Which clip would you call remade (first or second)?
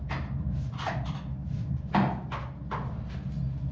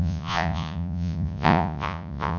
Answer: second